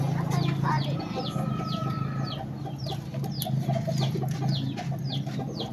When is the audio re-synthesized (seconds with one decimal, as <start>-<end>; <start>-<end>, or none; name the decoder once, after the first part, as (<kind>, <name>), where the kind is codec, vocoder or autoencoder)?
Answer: none